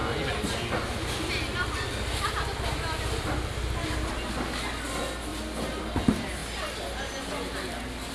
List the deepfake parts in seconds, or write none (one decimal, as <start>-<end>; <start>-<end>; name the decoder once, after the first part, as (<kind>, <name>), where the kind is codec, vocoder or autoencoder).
none